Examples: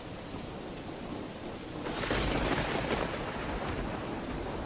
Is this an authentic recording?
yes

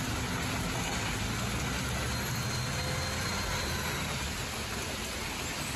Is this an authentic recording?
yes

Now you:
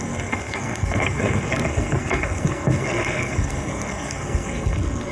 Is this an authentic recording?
no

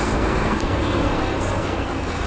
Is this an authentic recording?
no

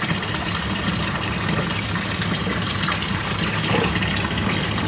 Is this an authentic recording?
yes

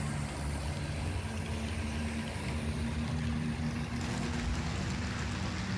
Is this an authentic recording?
yes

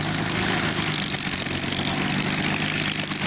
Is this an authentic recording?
yes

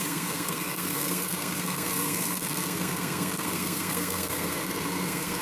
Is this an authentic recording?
no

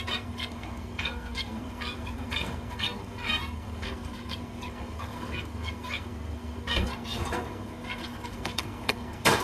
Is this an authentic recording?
no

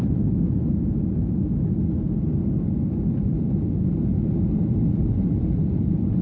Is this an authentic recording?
yes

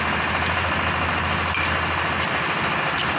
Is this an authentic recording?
yes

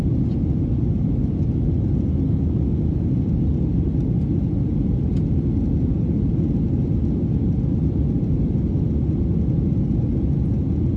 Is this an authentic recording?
yes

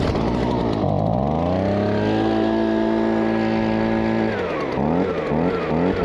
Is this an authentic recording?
yes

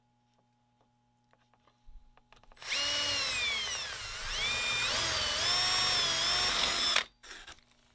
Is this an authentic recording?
yes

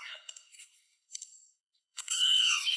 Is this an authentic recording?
no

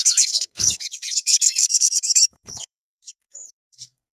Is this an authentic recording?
no